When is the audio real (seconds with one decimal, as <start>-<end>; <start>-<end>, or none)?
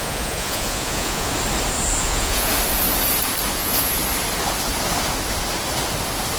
1.3-2.0; 2.5-3.5; 4.0-6.4